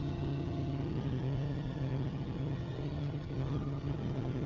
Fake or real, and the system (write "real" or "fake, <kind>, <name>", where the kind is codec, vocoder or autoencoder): fake, vocoder, HiFi-GAN